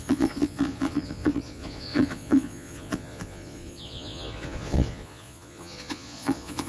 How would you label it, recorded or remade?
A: remade